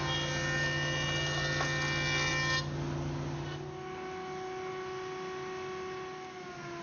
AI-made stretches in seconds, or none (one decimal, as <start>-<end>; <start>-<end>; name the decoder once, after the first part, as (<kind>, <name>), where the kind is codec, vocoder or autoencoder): none